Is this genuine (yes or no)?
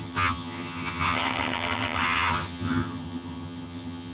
no